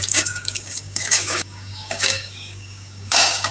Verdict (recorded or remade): remade